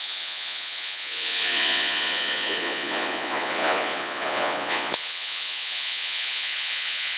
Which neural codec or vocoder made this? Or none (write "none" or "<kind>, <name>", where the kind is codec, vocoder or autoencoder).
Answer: vocoder, Vocos